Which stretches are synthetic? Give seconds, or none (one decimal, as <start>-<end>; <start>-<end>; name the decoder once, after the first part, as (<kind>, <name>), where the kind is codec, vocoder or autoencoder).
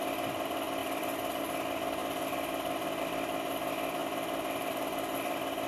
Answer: 0.8-1.4 (vocoder, BigVGAN v2)